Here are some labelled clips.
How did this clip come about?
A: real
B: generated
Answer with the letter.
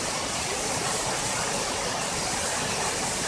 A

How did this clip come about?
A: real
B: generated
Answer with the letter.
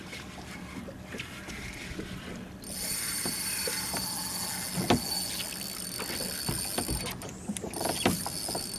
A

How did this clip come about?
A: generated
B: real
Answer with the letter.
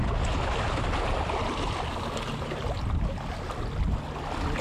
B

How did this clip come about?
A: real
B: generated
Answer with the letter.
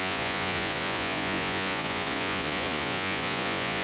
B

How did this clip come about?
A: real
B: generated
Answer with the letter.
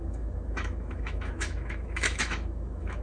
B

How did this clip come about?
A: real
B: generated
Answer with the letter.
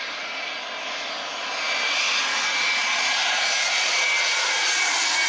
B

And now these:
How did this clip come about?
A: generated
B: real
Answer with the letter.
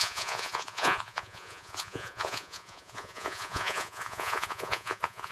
A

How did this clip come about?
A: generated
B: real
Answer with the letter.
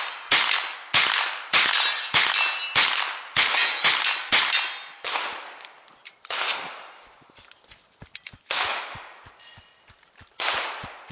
B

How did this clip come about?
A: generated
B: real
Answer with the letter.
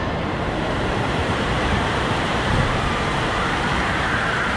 A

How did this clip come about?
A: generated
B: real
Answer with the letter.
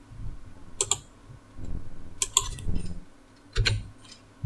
B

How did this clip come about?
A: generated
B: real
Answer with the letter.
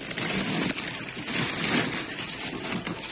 B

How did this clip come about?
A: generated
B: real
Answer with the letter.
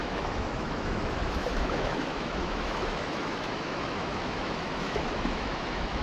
A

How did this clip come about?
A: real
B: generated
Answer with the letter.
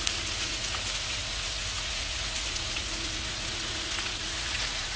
B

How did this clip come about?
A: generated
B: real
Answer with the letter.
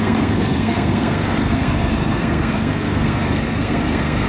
A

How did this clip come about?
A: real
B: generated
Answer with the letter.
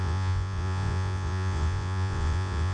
B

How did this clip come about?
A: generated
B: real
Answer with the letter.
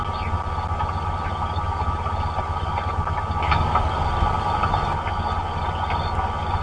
B